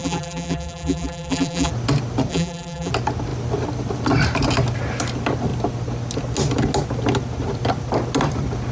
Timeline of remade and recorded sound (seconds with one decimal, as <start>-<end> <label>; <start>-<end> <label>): 0.0-1.7 remade; 1.7-2.3 recorded; 2.3-2.9 remade; 2.9-8.7 recorded